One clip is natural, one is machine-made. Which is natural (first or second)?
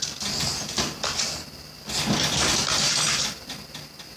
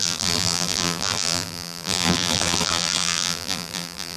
first